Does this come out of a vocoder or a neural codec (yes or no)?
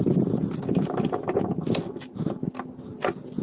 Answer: no